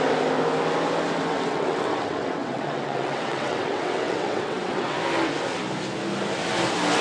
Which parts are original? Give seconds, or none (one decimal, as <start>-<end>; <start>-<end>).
0.0-1.3; 5.0-7.0